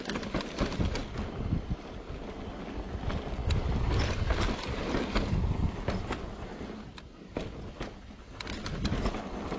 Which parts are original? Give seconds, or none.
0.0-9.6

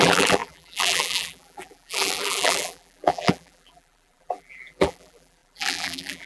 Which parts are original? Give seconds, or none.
none

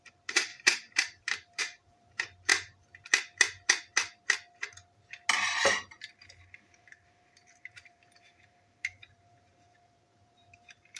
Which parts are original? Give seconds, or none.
2.5-6.4